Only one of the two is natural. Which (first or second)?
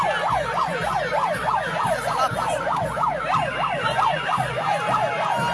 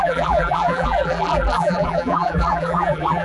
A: first